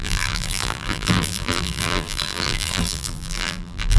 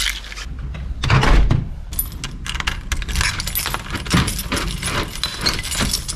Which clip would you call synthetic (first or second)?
first